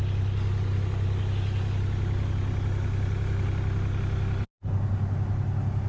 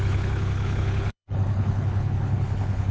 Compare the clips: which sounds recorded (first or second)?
first